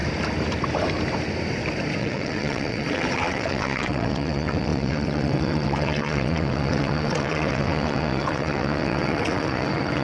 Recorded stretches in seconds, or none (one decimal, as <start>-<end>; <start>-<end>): 0.0-2.0